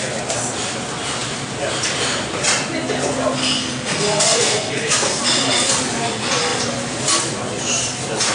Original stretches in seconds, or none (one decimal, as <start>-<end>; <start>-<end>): 0.0-3.4; 5.2-8.3